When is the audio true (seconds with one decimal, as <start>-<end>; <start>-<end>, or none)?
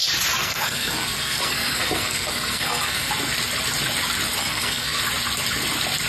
0.0-0.4; 3.1-4.4; 5.0-6.1